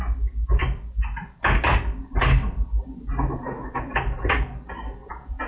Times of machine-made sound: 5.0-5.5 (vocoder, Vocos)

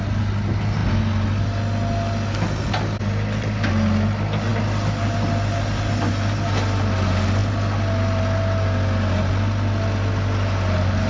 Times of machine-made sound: none

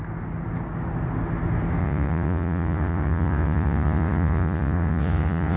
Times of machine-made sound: 1.8-5.6 (vocoder, Vocos)

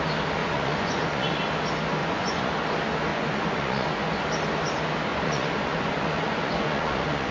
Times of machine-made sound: 0.4-1.4 (vocoder, Vocos); 2.0-2.5; 3.1-4.2; 5.1-7.3

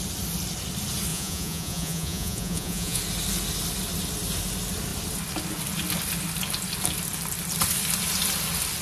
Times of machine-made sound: 1.1-3.0 (vocoder, Vocos)

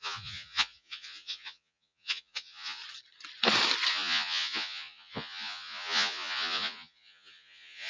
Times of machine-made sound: 0.0-2.8 (vocoder, Vocos); 3.9-7.9